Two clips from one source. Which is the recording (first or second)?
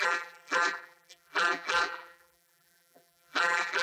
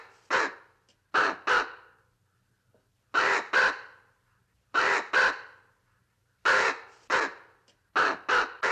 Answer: second